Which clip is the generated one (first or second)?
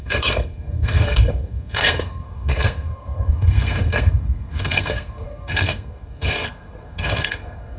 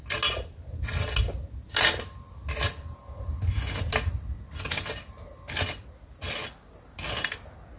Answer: first